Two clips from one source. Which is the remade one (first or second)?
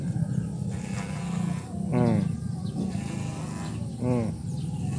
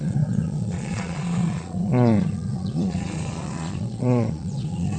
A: second